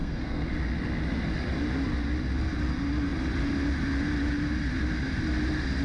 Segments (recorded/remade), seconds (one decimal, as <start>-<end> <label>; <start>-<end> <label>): 0.0-0.5 remade; 0.5-5.8 recorded